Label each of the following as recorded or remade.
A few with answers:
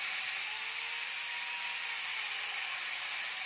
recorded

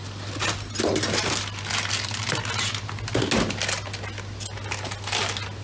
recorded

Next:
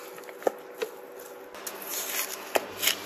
recorded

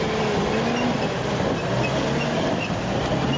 recorded